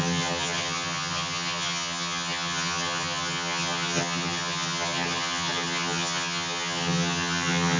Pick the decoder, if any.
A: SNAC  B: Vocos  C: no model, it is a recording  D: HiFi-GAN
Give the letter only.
D